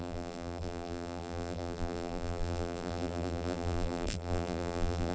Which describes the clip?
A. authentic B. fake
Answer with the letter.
B